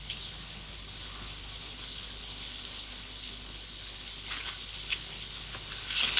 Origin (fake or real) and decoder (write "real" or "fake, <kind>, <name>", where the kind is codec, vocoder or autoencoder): fake, codec, HILCodec